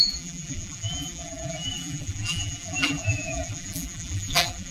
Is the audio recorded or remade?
remade